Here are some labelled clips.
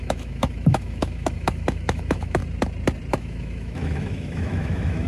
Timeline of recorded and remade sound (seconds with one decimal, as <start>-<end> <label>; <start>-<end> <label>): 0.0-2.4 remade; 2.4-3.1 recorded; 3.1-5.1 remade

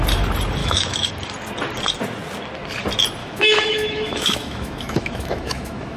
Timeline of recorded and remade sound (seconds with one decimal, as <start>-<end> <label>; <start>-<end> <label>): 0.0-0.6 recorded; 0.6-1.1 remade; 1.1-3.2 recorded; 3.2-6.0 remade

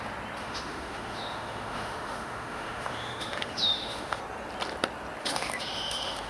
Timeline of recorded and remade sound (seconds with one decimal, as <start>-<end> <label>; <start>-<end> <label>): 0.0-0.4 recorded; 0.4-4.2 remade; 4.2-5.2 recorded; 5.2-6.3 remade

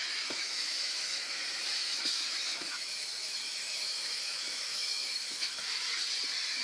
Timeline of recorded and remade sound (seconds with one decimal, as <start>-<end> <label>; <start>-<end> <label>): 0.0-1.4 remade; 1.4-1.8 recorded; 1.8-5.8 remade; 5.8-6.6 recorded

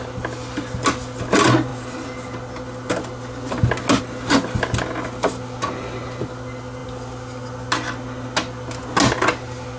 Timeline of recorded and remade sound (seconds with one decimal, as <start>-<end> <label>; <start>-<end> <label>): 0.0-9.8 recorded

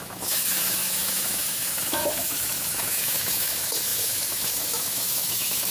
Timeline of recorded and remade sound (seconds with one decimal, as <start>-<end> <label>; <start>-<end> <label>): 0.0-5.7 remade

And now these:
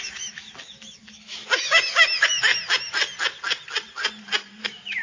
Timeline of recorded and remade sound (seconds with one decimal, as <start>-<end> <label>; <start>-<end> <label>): 0.0-2.5 remade; 2.5-4.6 recorded; 4.6-5.0 remade

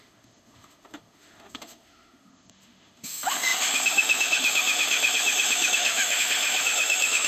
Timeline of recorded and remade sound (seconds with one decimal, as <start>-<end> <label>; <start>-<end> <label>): 0.0-7.3 remade